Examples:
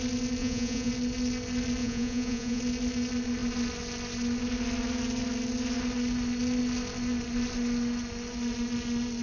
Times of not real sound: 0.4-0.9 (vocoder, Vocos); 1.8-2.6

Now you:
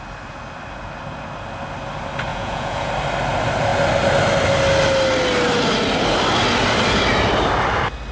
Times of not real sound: 2.3-2.9 (vocoder, Vocos)

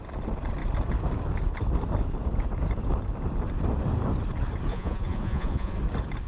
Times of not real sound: 4.7-5.8 (vocoder, Vocos)

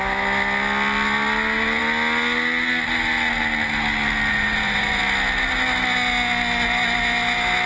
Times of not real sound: 4.3-5.0 (vocoder, Vocos)